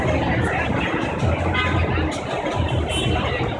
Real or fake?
real